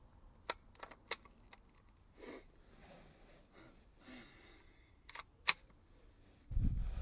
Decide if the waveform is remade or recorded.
recorded